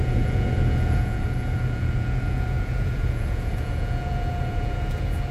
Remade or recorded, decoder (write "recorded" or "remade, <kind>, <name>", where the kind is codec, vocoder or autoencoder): remade, vocoder, Vocos